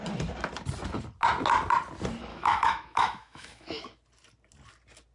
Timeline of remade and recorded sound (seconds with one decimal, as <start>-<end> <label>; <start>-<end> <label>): 0.0-2.3 recorded; 2.3-3.8 remade; 3.8-5.1 recorded